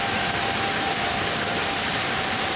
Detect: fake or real real